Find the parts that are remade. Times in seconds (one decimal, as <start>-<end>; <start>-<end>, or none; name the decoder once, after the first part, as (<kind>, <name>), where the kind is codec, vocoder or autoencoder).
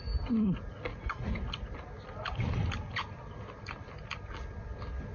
none